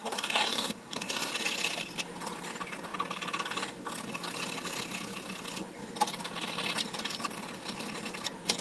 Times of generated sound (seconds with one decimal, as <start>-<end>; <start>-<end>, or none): 0.0-1.3